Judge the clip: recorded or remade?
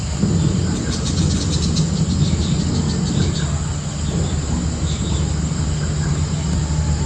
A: recorded